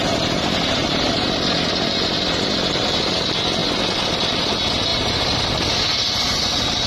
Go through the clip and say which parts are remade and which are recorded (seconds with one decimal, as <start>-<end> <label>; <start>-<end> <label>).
0.0-0.8 recorded; 0.8-1.6 remade; 1.6-4.9 recorded; 4.9-5.4 remade; 5.4-6.9 recorded